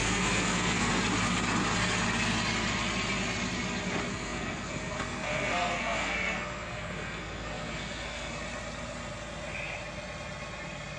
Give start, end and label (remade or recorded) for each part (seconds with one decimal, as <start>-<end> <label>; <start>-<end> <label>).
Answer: 0.0-0.9 remade; 0.9-4.1 recorded; 4.1-8.4 remade; 8.4-11.0 recorded

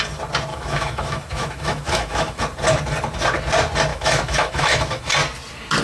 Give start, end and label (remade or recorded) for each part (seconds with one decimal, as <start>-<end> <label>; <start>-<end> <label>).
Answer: 0.0-0.5 recorded; 0.5-2.4 remade; 2.4-3.9 recorded; 3.9-5.0 remade; 5.0-5.8 recorded